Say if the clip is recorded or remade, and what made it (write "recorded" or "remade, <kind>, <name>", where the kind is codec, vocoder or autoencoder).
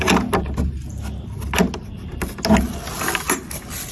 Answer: recorded